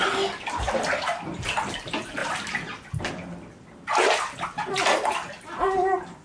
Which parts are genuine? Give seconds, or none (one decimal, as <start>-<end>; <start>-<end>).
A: 0.0-6.2